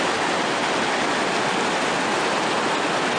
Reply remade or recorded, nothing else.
recorded